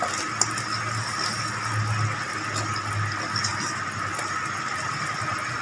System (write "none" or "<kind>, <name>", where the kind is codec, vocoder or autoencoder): none